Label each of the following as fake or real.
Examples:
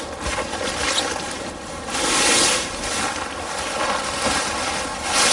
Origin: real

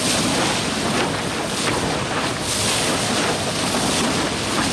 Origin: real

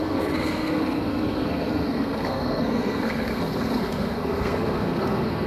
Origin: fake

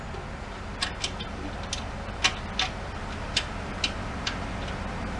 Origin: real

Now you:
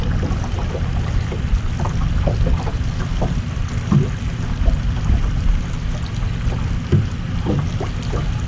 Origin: real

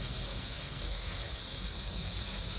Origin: fake